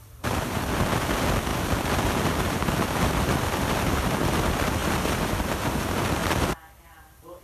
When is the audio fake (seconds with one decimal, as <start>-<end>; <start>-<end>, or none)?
0.0-6.2; 6.9-7.4